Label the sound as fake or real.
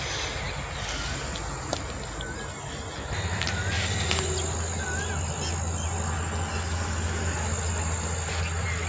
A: real